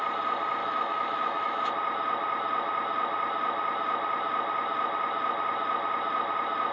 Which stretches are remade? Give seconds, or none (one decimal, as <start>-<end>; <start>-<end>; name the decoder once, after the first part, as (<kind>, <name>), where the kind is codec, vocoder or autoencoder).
0.6-1.6 (autoencoder, DAC-VAE)